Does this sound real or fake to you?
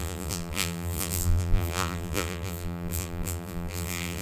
fake